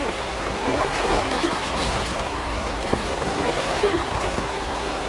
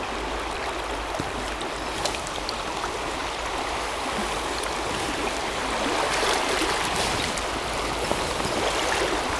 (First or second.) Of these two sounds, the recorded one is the second